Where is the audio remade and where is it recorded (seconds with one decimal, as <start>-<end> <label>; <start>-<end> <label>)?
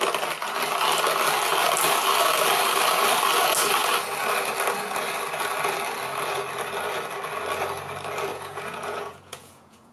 0.0-8.3 recorded; 8.3-9.9 remade